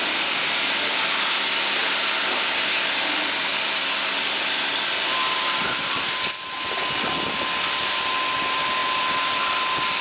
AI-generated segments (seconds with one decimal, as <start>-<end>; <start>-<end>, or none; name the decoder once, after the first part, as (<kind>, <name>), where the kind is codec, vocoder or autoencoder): 3.5-7.9 (vocoder, BigVGAN v2); 8.8-9.5